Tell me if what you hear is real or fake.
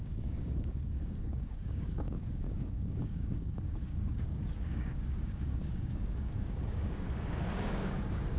fake